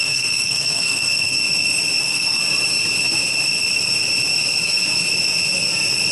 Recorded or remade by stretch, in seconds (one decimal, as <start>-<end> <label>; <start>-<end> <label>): 0.0-1.4 remade; 1.4-2.0 recorded; 2.0-2.4 remade; 2.4-6.1 recorded